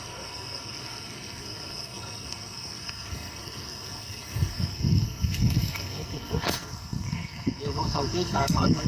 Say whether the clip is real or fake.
fake